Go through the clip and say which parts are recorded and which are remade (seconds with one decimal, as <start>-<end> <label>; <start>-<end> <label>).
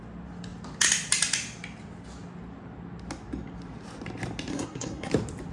0.0-4.5 recorded; 4.5-5.1 remade; 5.1-5.5 recorded